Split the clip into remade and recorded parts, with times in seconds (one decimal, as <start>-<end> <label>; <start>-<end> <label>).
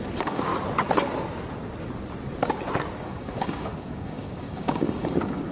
0.0-0.5 remade; 0.5-3.0 recorded; 3.0-5.5 remade